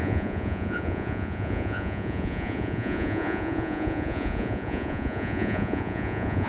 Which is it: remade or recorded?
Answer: remade